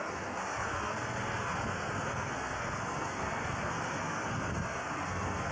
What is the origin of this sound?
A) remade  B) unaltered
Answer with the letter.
A